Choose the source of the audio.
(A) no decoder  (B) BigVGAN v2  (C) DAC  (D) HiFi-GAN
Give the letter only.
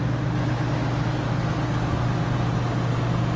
A